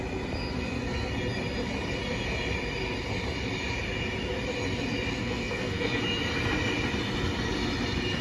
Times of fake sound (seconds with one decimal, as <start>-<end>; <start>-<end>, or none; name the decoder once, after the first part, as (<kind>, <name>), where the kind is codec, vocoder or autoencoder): 5.2-6.0 (codec, SNAC)